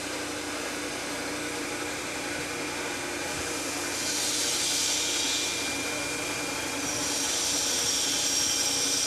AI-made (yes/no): no